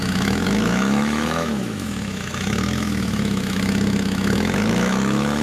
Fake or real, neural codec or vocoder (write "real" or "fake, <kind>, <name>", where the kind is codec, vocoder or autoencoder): fake, autoencoder, DAC-VAE